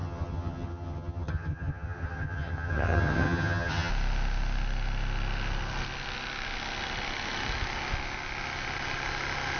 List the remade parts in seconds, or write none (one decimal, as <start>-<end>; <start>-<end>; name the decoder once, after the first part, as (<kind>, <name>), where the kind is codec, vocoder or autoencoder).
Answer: 0.0-3.9 (vocoder, HiFi-GAN)